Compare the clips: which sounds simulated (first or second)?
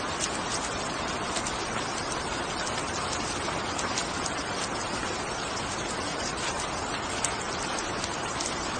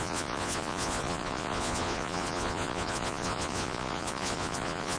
second